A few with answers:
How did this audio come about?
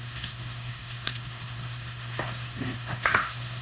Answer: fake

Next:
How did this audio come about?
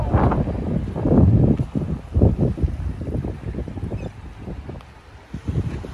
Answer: real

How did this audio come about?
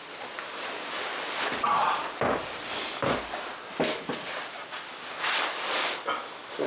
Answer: real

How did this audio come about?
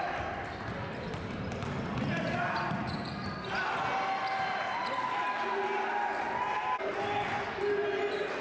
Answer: real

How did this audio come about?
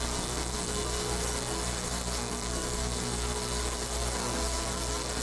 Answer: fake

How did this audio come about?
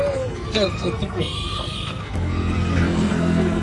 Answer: fake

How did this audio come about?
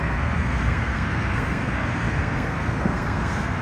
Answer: fake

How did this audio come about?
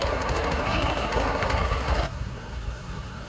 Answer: fake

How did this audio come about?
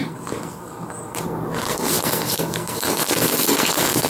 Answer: fake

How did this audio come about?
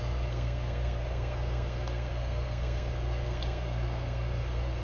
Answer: fake